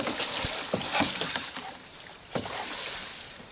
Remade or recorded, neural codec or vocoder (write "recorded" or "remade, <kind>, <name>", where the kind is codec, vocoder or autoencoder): recorded